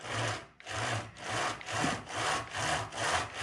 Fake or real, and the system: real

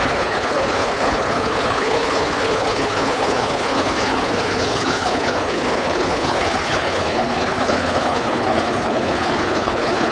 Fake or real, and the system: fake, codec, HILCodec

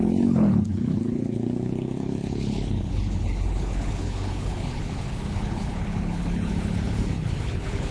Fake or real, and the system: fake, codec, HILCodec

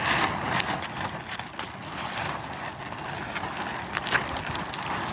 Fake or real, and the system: real